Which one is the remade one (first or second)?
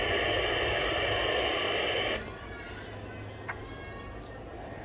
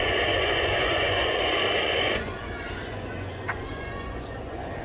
second